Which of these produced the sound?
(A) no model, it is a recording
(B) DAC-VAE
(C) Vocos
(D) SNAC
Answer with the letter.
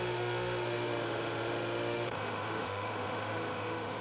B